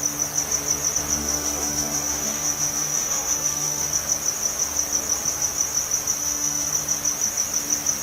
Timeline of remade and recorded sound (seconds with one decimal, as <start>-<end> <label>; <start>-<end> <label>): 0.0-1.2 recorded; 1.2-3.9 remade; 3.9-6.2 recorded; 6.2-6.7 remade; 6.7-8.0 recorded